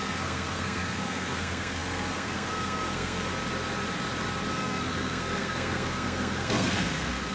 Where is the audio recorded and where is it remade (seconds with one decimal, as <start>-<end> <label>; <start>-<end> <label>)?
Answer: 0.0-3.3 remade; 3.3-4.5 recorded; 4.5-7.3 remade